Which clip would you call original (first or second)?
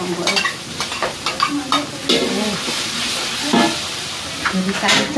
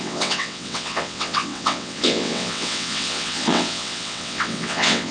first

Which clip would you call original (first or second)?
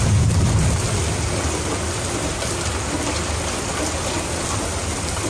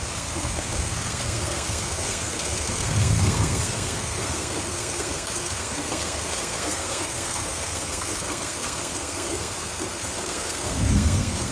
first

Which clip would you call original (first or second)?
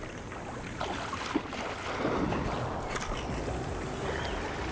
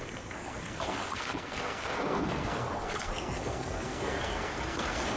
first